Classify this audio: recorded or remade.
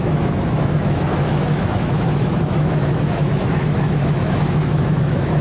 remade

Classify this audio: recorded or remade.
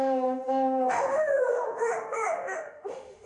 remade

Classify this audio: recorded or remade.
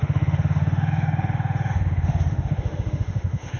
remade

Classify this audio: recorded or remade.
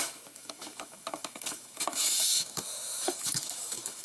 remade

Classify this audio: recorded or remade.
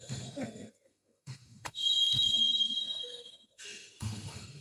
remade